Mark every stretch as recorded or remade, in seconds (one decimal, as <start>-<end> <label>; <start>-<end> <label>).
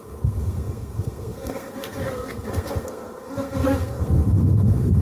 0.0-5.0 remade